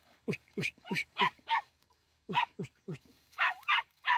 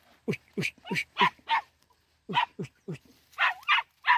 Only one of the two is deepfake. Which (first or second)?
first